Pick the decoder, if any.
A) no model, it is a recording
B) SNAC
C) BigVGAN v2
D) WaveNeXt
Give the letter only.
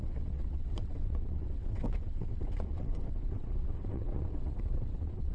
D